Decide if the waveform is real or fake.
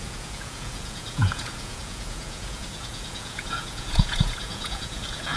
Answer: fake